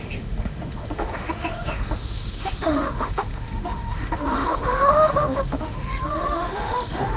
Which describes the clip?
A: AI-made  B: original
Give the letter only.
A